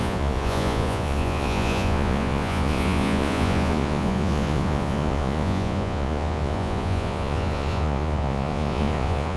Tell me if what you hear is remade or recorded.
remade